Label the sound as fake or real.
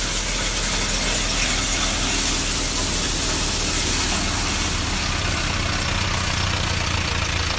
real